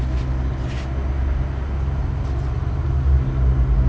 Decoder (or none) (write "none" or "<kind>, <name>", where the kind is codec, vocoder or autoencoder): none